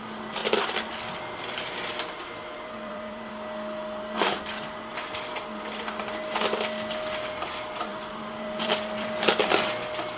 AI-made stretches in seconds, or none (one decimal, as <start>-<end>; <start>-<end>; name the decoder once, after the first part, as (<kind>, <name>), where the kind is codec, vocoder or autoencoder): 0.4-3.3 (vocoder, BigVGAN v2); 7.9-9.3